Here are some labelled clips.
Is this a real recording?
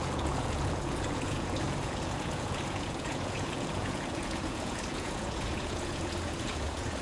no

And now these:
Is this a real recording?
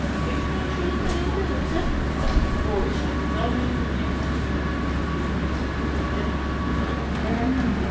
yes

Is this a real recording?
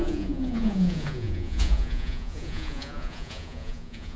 no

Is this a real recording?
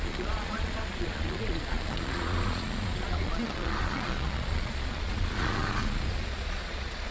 no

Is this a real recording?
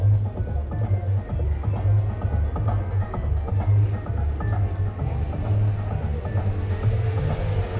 yes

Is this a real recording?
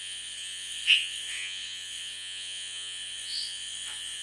no